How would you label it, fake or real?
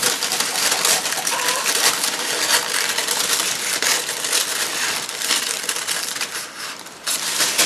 fake